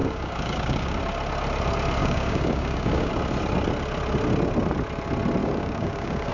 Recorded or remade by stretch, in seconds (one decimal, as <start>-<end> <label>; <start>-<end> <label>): 0.0-1.0 remade; 1.0-2.0 recorded; 2.0-3.1 remade; 3.1-5.4 recorded; 5.4-6.3 remade